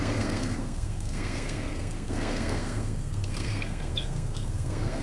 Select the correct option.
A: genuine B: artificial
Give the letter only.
B